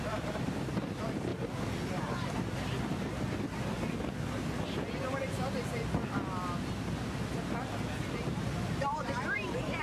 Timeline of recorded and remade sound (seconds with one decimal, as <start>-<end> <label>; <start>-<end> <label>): 0.0-1.3 remade; 1.3-5.1 recorded; 5.1-6.0 remade; 6.0-8.1 recorded; 8.1-9.8 remade